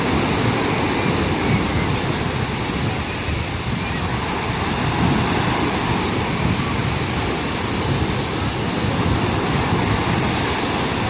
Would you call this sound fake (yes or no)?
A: no